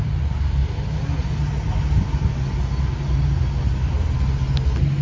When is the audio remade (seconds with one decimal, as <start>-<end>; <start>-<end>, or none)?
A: none

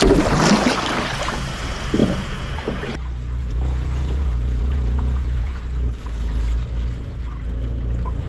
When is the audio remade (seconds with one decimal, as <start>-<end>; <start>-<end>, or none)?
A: 2.0-2.5; 3.4-5.6

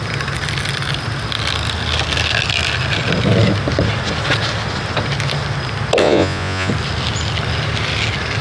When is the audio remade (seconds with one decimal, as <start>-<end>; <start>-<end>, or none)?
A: 6.0-6.7

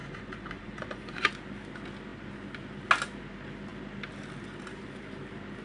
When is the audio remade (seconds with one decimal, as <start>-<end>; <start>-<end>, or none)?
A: 0.0-1.3